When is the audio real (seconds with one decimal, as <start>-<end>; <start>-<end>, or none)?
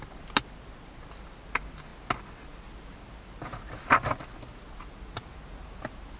0.0-6.2